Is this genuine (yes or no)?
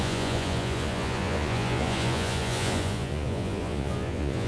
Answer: no